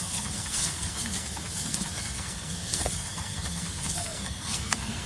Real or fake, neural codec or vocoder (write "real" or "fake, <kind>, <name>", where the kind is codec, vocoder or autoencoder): fake, codec, SNAC